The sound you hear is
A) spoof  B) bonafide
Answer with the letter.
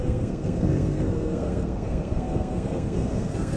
A